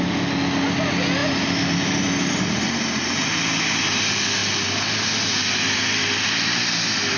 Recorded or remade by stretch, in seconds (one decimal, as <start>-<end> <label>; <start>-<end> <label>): 0.0-4.4 recorded; 4.4-5.8 remade; 5.8-7.2 recorded